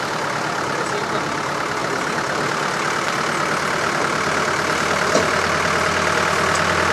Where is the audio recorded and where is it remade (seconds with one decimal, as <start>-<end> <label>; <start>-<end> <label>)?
0.0-6.9 recorded